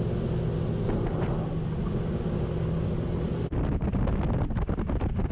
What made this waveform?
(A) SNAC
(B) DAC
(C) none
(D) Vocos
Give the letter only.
C